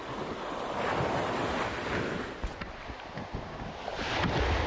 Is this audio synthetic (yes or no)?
no